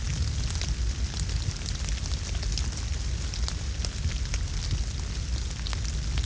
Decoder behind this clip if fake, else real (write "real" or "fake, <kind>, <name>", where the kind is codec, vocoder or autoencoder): real